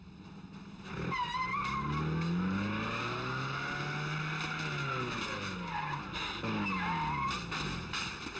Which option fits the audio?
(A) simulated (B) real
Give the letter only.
B